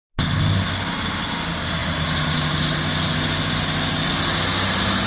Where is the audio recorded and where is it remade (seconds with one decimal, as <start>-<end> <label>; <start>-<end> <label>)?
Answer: 0.0-5.1 recorded